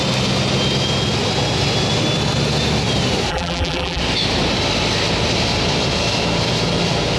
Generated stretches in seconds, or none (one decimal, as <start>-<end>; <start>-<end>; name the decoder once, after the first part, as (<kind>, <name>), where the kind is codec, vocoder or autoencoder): 3.3-4.0 (vocoder, BigVGAN v2)